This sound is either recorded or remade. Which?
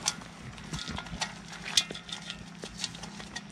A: recorded